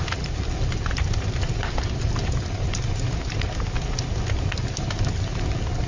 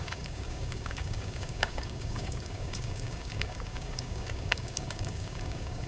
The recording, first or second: first